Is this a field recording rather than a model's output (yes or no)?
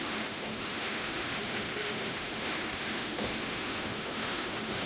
no